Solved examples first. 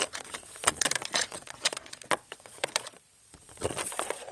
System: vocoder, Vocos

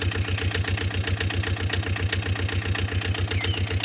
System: none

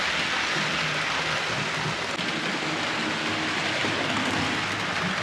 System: none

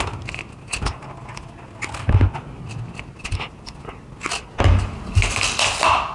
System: none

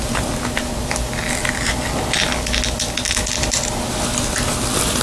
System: none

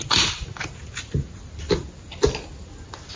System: none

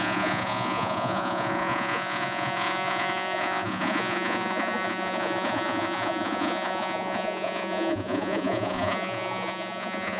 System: vocoder, Vocos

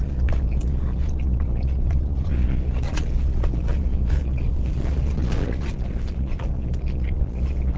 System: vocoder, Vocos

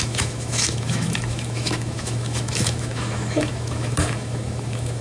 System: autoencoder, DAC-VAE